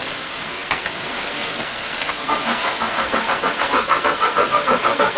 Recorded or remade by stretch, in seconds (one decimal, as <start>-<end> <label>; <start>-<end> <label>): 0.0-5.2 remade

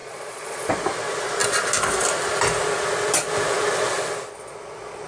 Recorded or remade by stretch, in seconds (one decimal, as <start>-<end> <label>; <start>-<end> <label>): 0.0-0.7 remade; 0.7-5.1 recorded

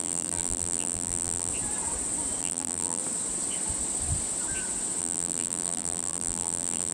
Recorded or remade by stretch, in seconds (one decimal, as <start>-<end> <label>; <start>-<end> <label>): 0.0-1.5 remade; 1.5-2.4 recorded; 2.4-3.0 remade; 3.0-5.0 recorded; 5.0-6.9 remade